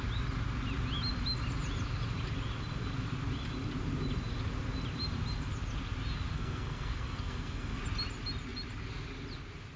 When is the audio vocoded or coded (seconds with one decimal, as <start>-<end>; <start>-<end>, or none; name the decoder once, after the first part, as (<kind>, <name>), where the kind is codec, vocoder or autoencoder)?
6.3-7.8 (codec, SNAC)